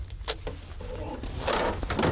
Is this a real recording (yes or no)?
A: yes